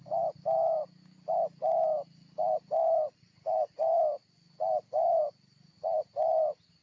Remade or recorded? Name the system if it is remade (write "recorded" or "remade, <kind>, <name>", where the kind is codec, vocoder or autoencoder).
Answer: recorded